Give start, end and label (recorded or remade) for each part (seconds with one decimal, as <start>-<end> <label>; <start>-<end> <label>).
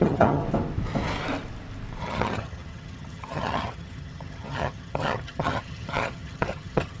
0.0-0.4 remade; 0.4-2.0 recorded; 2.0-7.0 remade